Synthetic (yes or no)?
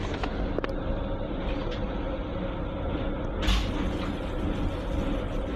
no